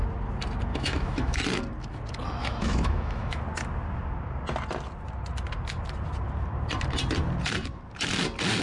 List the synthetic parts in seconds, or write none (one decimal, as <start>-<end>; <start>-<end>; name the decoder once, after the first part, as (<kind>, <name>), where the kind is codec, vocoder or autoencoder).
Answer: 0.7-1.4 (autoencoder, DAC-VAE); 2.4-3.4